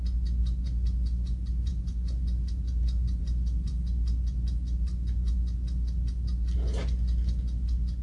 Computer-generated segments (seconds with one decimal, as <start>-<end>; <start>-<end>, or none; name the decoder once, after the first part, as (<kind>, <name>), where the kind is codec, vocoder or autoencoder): none